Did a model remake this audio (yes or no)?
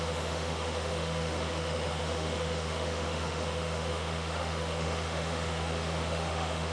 yes